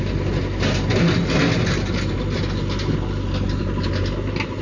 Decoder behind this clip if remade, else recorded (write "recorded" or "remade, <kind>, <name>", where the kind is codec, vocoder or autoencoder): recorded